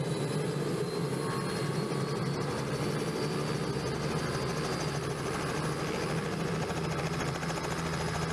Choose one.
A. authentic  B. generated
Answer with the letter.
A